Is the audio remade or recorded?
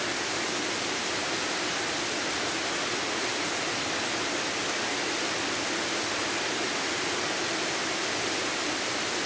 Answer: recorded